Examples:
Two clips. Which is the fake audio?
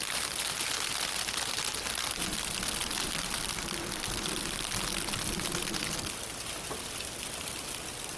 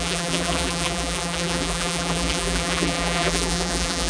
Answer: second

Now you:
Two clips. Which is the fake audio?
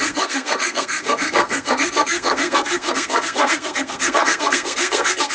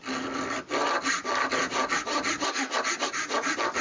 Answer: first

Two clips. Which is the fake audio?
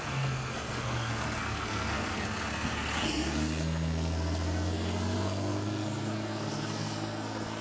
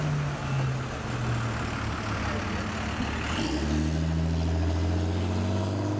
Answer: first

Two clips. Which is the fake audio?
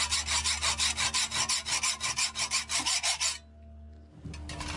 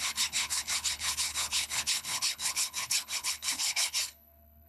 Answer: second